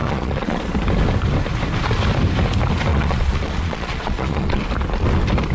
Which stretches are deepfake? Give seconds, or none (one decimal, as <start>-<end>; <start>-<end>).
0.0-0.6; 2.9-4.6